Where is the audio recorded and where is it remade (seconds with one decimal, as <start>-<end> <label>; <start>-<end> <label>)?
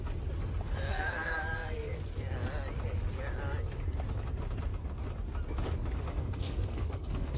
0.0-0.9 recorded; 0.9-2.0 remade; 2.0-6.1 recorded; 6.1-7.4 remade